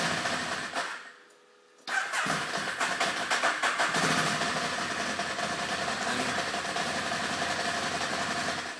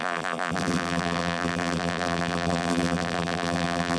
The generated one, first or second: second